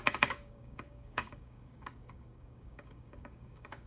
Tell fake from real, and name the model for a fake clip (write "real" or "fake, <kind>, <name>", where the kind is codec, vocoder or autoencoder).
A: fake, codec, DAC